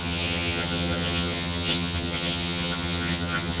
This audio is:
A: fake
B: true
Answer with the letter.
A